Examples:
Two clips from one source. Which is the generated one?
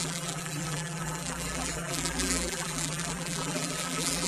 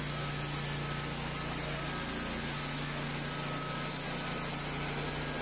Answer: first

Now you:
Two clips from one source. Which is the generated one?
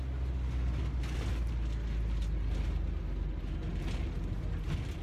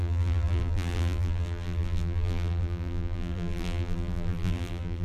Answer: second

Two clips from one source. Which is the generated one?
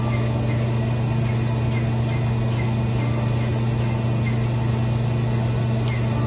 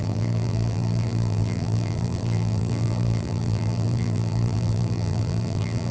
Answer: second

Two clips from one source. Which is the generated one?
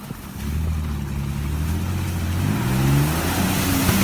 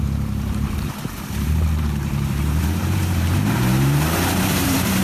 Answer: second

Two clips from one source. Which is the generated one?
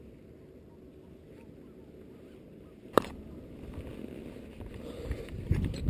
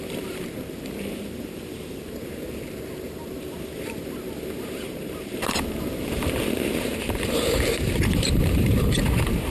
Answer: second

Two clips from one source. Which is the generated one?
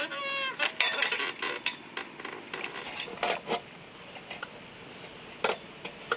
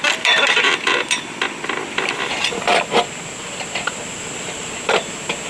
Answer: second